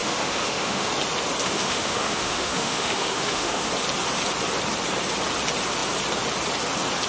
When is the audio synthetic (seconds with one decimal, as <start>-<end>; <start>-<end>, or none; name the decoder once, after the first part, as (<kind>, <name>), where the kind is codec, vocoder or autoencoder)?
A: 0.0-0.9 (autoencoder, DAC-VAE); 1.4-3.7